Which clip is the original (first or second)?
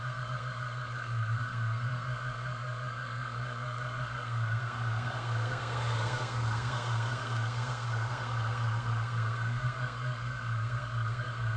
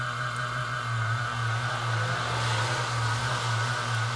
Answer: second